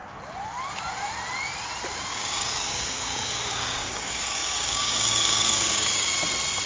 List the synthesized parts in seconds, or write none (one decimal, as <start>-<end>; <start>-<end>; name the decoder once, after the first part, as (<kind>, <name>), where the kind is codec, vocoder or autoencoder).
2.1-6.1 (codec, DAC)